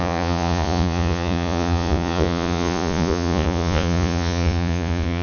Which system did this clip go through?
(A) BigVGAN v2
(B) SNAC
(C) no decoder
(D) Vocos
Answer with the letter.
D